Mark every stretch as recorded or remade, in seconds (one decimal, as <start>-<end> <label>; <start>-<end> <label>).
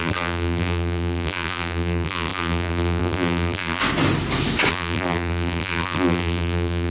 0.0-3.8 remade; 3.8-4.7 recorded; 4.7-6.9 remade